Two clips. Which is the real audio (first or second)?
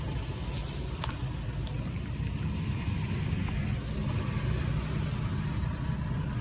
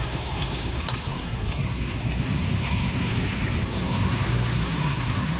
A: first